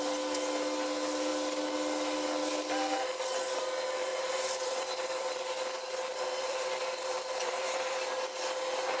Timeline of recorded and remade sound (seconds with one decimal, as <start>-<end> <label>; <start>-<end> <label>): 0.0-4.0 recorded; 4.0-5.4 remade; 5.4-6.1 recorded; 6.1-8.1 remade; 8.1-9.0 recorded